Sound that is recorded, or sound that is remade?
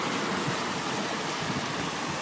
recorded